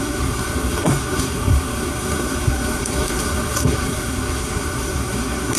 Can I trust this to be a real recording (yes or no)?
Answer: no